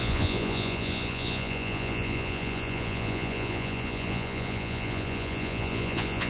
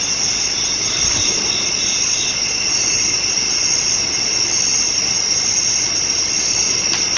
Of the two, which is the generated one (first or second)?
first